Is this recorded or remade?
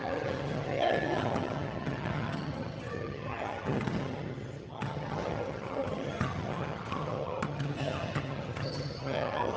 remade